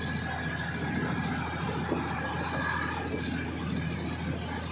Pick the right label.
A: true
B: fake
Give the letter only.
A